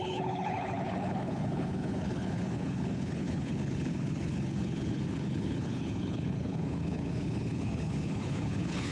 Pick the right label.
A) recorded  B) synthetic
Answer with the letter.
B